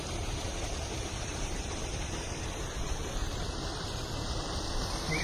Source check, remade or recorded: remade